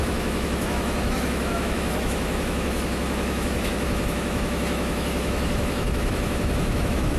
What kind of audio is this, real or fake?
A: fake